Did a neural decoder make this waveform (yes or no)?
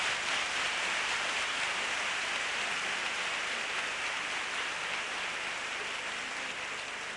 no